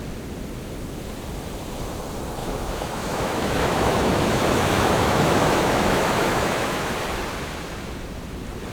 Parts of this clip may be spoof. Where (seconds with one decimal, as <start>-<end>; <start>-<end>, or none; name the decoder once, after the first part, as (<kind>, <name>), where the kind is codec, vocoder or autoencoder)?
2.4-6.9 (autoencoder, DAC-VAE)